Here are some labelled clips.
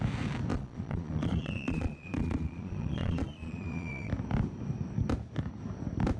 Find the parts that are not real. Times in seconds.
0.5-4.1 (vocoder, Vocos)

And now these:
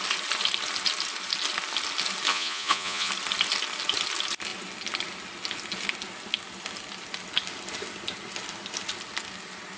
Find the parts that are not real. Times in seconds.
2.3-3.1 (vocoder, Vocos)

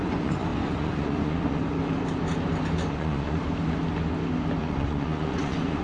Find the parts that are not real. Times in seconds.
0.0-1.6 (vocoder, Vocos); 2.9-3.4; 4.6-5.8